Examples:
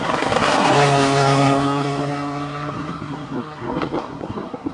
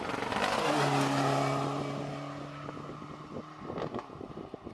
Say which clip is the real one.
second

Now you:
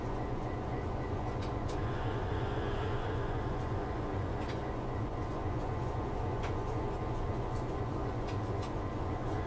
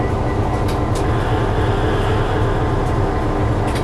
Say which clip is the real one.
second